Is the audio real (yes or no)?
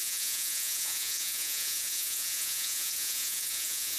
no